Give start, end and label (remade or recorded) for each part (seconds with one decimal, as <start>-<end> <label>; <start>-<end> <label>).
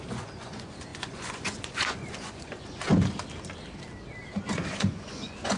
0.0-2.9 remade; 2.9-4.3 recorded; 4.3-5.6 remade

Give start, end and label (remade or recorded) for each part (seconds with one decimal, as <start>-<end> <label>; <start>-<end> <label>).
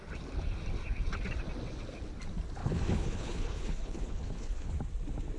0.0-2.6 recorded; 2.6-4.7 remade; 4.7-5.4 recorded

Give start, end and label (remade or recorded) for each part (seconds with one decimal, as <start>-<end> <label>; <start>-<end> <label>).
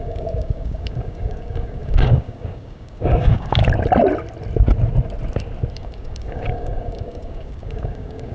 0.0-3.6 remade; 3.6-5.7 recorded; 5.7-8.3 remade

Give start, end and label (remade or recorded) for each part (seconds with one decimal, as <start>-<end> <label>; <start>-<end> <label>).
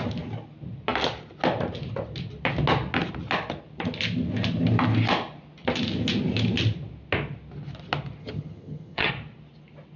0.0-8.2 recorded; 8.2-9.1 remade; 9.1-10.0 recorded